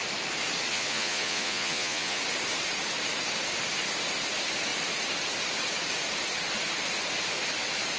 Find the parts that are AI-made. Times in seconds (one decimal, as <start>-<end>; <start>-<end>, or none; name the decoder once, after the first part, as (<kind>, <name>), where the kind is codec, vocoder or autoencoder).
0.7-2.2 (vocoder, Vocos)